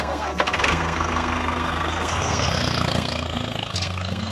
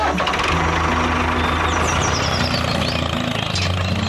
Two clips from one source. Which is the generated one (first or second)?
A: first